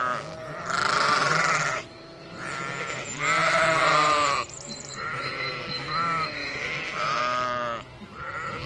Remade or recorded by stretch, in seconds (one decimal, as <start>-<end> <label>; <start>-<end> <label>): 0.0-1.2 recorded; 1.2-2.6 remade; 2.6-3.4 recorded; 3.4-5.6 remade; 5.6-6.4 recorded; 6.4-7.2 remade; 7.2-8.7 recorded